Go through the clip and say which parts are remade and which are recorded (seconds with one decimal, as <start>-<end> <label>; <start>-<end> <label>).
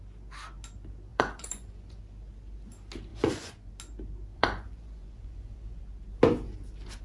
0.0-1.1 recorded; 1.1-2.0 remade; 2.0-3.1 recorded; 3.1-3.7 remade; 3.7-4.3 recorded; 4.3-5.8 remade; 5.8-7.0 recorded